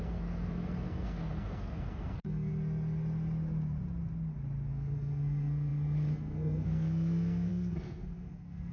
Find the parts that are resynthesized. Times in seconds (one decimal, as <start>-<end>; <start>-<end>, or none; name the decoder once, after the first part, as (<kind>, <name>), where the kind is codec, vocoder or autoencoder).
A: 0.0-2.5 (codec, SNAC); 4.7-8.7